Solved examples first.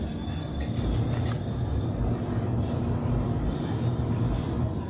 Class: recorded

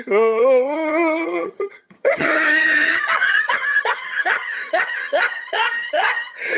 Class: remade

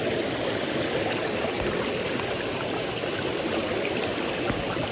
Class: recorded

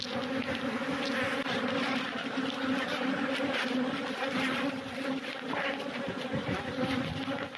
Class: recorded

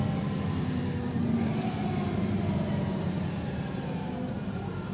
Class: remade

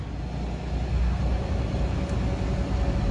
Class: recorded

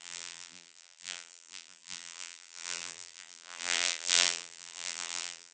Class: remade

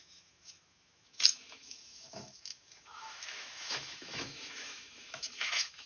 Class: remade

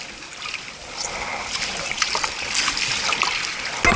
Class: recorded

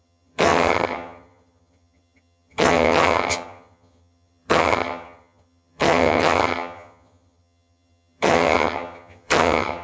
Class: remade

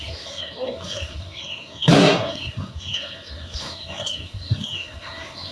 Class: remade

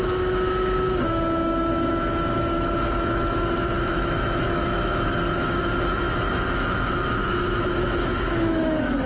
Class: remade